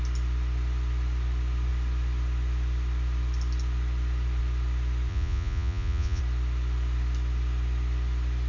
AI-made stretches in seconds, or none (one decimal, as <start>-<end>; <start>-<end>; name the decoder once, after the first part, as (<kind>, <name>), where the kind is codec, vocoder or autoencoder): 5.1-6.2 (vocoder, Vocos)